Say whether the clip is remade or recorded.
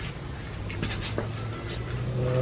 recorded